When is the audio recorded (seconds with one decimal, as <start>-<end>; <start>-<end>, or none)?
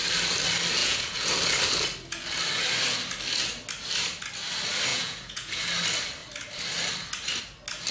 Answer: 0.0-0.8; 1.3-4.9; 5.6-7.9